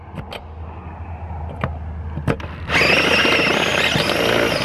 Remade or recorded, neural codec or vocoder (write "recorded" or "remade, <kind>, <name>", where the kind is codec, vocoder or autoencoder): recorded